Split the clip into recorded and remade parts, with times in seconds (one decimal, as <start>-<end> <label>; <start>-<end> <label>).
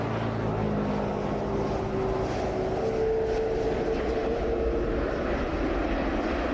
0.0-6.5 recorded